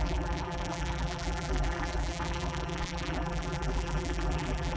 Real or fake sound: fake